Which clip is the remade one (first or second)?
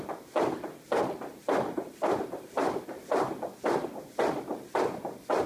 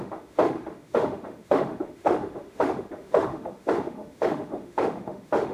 second